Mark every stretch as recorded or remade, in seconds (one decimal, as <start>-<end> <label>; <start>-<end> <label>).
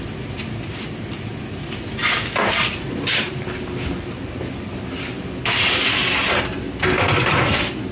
0.0-7.9 recorded